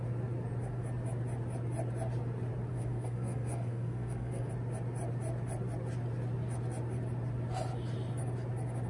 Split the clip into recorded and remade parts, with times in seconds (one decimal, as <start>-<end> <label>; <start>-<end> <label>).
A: 0.0-2.7 recorded; 2.7-4.5 remade; 4.5-8.9 recorded